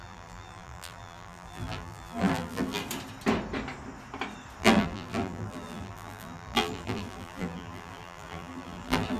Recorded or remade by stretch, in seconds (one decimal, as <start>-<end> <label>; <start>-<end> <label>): 0.0-2.8 remade; 2.8-4.6 recorded; 4.6-9.2 remade